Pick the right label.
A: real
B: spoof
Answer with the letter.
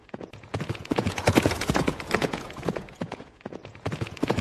B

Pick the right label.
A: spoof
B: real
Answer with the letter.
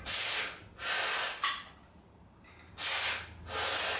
B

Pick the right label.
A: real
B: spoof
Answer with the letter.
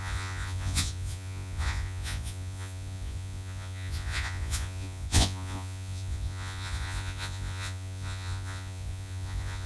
B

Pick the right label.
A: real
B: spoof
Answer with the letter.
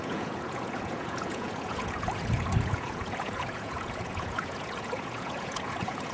B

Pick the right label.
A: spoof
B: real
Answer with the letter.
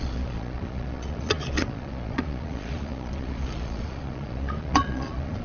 A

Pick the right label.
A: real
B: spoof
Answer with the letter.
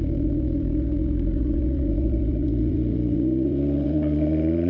B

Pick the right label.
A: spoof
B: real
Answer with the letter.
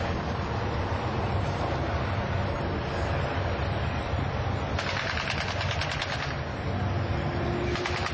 B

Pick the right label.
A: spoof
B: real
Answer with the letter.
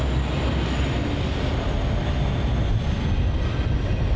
B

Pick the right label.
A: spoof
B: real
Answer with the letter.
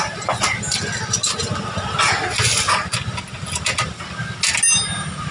B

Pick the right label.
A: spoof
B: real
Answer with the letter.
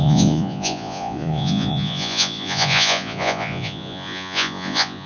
A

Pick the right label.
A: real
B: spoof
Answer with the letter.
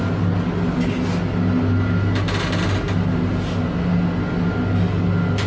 A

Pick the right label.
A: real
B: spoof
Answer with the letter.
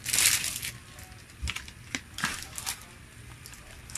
A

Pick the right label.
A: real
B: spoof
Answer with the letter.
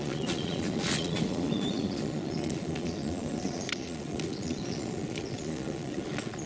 B